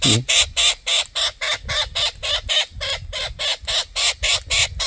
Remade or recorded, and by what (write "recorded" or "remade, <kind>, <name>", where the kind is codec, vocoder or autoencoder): recorded